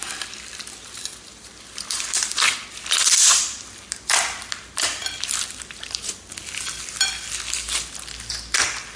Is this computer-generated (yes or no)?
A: no